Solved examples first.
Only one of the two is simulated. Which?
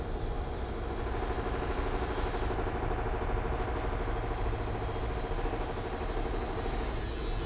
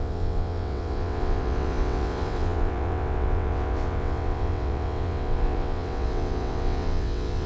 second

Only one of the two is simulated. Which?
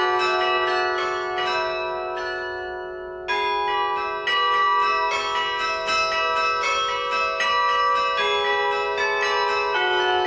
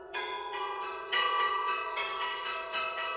second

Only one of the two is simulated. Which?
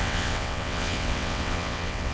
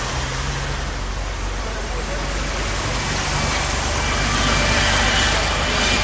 first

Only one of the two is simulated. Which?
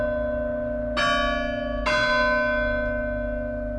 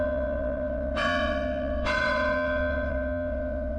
second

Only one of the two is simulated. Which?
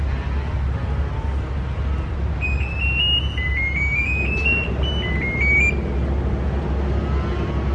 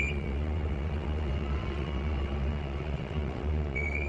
second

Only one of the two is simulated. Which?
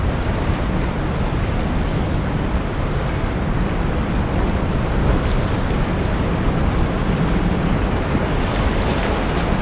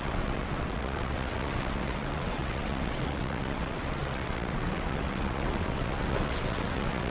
second